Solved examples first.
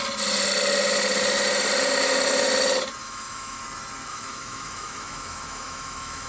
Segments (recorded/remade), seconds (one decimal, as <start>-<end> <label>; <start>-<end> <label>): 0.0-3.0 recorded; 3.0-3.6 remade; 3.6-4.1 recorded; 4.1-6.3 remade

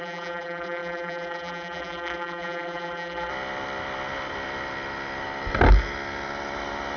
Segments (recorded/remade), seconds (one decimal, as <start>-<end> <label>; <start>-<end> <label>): 0.0-3.3 remade; 3.3-7.0 recorded

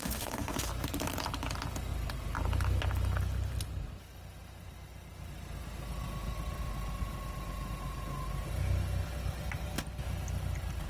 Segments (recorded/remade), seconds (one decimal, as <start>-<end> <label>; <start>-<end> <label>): 0.0-0.7 remade; 0.7-10.9 recorded

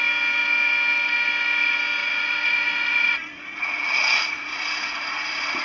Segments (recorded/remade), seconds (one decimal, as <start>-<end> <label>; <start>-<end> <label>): 0.0-2.0 recorded; 2.0-5.6 remade

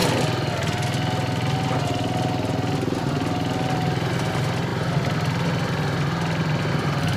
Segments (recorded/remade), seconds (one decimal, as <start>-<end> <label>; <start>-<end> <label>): 0.0-7.2 recorded

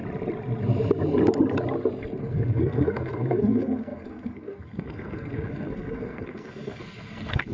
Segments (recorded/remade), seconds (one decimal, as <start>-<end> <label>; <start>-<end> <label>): 0.0-2.2 recorded; 2.2-7.5 remade